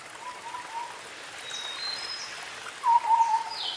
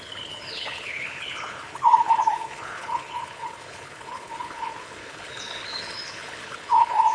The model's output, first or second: second